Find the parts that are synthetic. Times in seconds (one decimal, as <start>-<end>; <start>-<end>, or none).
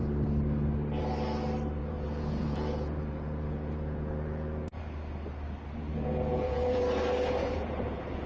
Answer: 1.8-4.8; 5.9-6.8; 7.4-8.3